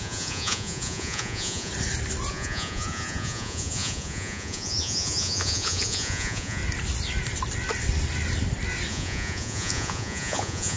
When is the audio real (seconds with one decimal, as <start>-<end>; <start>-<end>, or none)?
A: 1.7-2.3; 6.6-8.9